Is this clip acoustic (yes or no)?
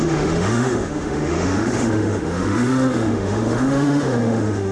no